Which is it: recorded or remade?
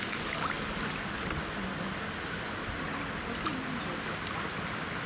recorded